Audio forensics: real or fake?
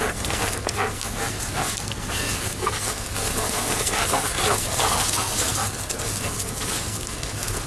fake